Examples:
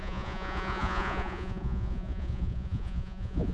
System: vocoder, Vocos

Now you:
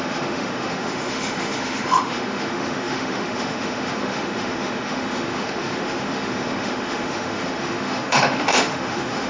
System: autoencoder, DAC-VAE